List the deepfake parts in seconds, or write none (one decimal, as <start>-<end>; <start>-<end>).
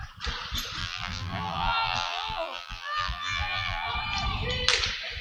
0.8-3.9